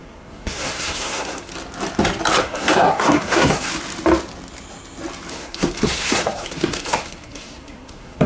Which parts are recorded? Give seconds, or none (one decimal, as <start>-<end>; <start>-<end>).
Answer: 1.5-2.4; 3.7-5.3